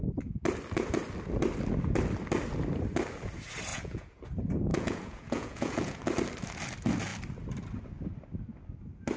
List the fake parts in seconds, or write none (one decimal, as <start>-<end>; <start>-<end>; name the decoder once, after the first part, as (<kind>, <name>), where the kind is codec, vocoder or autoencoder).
3.7-4.2 (vocoder, Vocos); 4.7-6.0